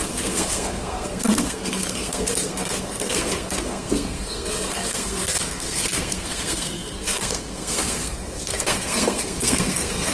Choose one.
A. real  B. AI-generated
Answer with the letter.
B